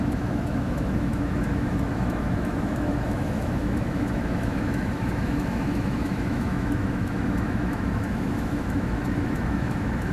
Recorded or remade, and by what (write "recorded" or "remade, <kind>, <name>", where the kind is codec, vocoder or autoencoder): remade, autoencoder, DAC-VAE